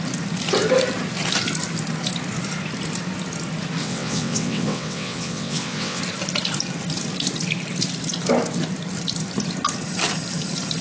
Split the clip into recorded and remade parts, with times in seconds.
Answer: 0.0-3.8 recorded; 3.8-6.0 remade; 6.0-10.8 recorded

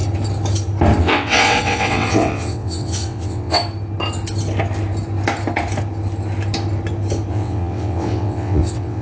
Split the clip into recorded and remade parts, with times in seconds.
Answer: 0.0-1.0 recorded; 1.0-3.6 remade; 3.6-7.3 recorded; 7.3-9.0 remade

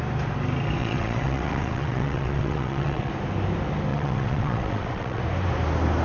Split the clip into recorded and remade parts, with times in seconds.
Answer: 0.0-0.8 recorded; 0.8-3.1 remade; 3.1-3.9 recorded; 3.9-5.2 remade; 5.2-6.0 recorded

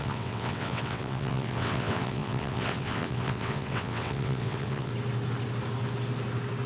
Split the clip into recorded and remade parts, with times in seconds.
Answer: 0.0-4.9 remade; 4.9-6.7 recorded

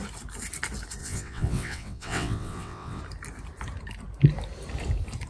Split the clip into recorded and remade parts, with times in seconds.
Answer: 0.0-1.0 recorded; 1.0-3.0 remade; 3.0-5.3 recorded

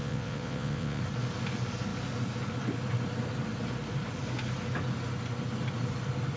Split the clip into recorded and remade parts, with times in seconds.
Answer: 0.0-1.0 remade; 1.0-6.4 recorded

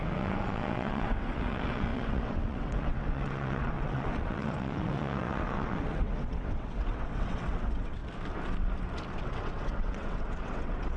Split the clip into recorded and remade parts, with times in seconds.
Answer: 0.0-8.0 remade; 8.0-9.2 recorded; 9.2-11.0 remade